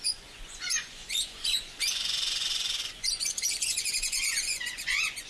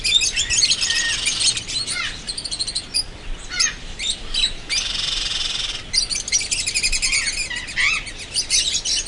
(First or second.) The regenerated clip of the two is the first